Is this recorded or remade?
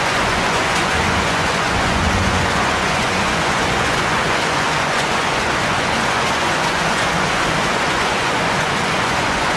remade